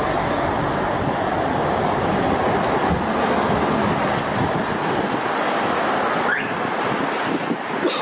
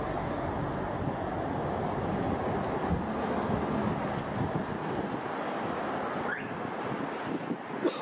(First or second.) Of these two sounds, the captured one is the second